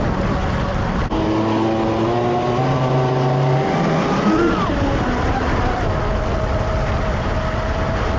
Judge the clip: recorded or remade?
recorded